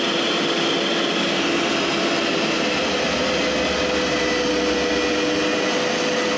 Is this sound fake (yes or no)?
no